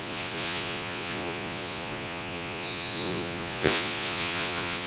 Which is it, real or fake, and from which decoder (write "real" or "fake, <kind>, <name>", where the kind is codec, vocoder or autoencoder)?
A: fake, vocoder, Vocos